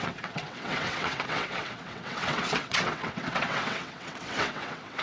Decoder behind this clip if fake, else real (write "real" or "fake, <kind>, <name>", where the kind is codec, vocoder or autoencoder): fake, vocoder, WaveNeXt